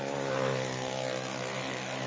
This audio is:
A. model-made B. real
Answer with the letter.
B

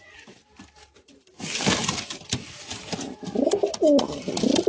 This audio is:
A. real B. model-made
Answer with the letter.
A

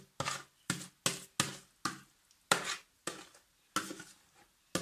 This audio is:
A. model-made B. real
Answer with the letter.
B